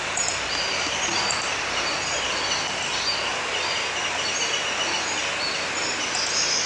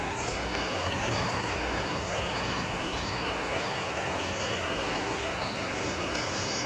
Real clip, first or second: first